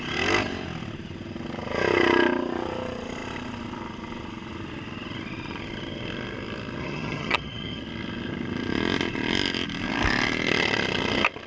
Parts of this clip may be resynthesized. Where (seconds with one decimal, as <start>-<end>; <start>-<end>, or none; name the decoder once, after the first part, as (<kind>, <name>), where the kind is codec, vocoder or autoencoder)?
6.8-7.8 (vocoder, HiFi-GAN)